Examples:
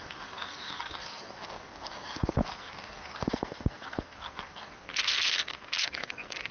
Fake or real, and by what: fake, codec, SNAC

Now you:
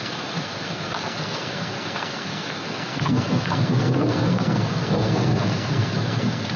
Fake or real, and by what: fake, codec, SNAC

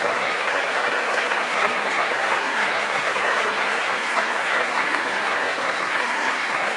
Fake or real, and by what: fake, codec, SNAC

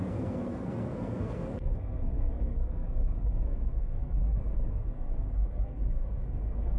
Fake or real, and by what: fake, codec, SNAC